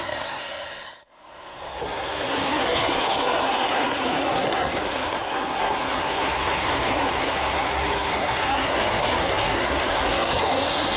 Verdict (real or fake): fake